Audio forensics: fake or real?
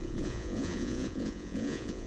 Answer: fake